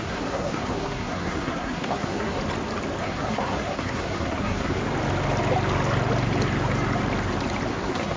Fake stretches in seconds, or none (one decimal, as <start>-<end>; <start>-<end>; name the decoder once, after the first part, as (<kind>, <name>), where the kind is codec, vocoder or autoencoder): 0.0-2.4 (codec, SNAC); 3.0-4.8; 7.7-8.2